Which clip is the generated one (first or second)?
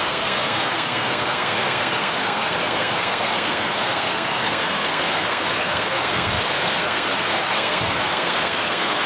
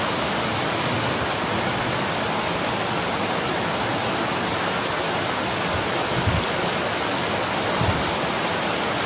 first